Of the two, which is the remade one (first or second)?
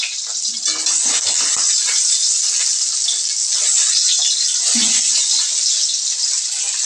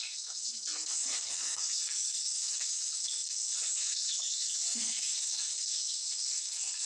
second